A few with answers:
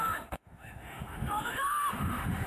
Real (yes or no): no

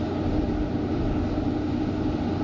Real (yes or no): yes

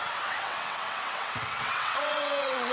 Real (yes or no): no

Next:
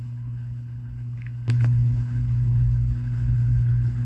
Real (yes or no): no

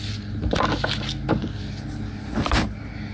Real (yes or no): yes